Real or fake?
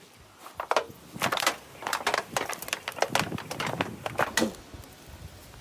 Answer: real